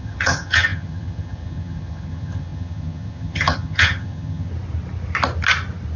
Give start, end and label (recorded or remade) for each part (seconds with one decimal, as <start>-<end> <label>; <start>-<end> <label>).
0.0-4.5 remade; 4.5-6.0 recorded